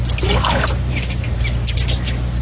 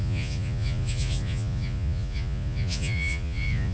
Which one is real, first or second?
first